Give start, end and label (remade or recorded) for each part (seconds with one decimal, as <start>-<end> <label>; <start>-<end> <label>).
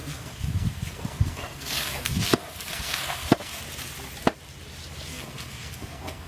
0.0-3.6 remade; 3.6-5.1 recorded; 5.1-6.3 remade